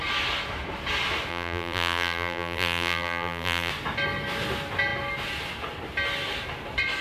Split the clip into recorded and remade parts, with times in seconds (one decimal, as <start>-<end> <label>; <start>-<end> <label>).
0.0-1.3 recorded; 1.3-3.7 remade; 3.7-7.0 recorded